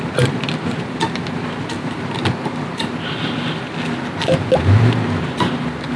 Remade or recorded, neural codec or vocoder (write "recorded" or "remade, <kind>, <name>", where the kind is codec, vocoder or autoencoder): recorded